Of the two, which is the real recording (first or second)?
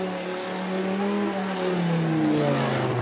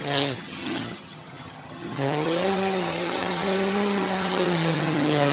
first